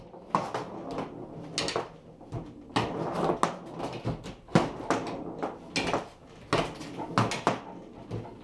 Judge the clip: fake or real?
real